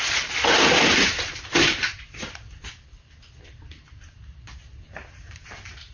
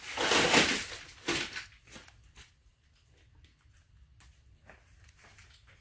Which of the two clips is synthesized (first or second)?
first